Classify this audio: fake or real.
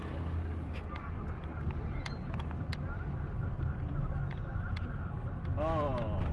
real